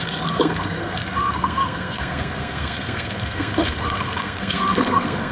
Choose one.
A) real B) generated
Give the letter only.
B